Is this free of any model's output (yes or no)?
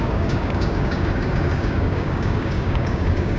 no